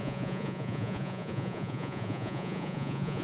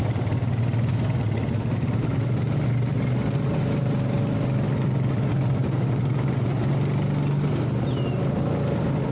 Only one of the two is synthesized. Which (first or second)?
first